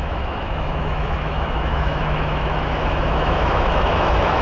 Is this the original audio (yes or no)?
no